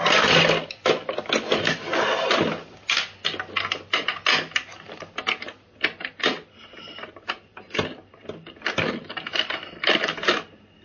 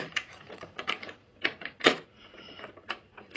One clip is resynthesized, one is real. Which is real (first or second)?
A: first